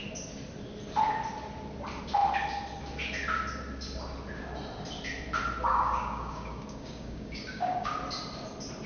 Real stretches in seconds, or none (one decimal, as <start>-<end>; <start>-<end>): 0.0-5.7; 7.9-8.9